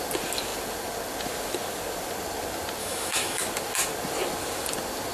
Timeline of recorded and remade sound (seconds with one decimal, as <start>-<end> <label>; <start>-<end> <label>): 0.0-2.8 recorded; 2.8-3.4 remade; 3.4-5.1 recorded